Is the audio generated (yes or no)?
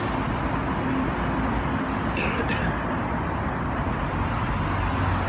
no